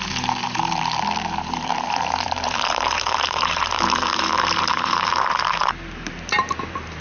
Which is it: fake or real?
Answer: fake